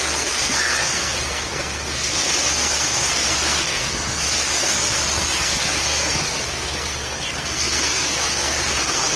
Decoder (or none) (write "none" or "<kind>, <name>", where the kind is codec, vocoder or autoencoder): codec, SNAC